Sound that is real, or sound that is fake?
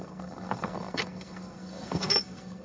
fake